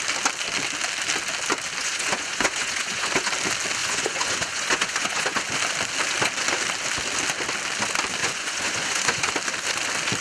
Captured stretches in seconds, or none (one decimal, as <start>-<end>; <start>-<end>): 0.0-1.8; 3.3-3.8; 5.4-8.2; 9.3-10.2